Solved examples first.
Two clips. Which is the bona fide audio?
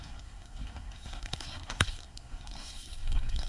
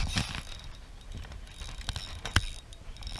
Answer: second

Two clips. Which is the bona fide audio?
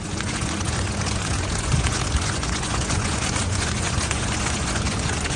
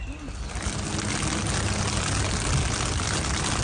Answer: second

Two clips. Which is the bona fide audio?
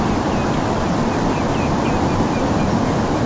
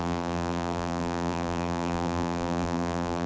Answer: first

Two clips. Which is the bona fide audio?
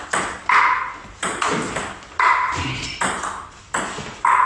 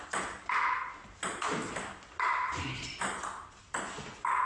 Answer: first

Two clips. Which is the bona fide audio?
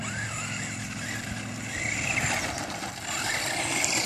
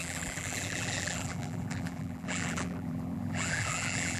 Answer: first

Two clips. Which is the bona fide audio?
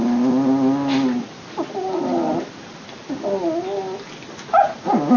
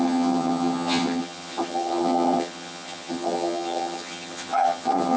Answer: first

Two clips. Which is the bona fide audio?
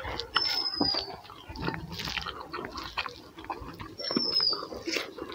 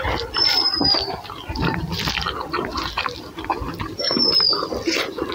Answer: first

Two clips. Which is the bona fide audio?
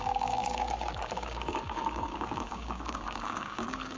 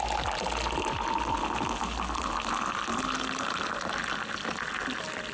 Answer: second